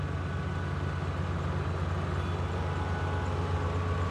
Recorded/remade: recorded